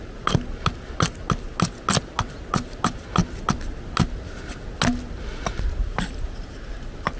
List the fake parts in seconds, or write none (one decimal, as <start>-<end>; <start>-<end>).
none